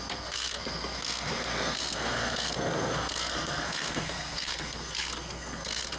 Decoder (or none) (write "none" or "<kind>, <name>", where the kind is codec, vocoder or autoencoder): codec, SNAC